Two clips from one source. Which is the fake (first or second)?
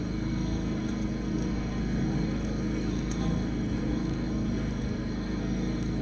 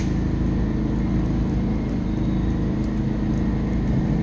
first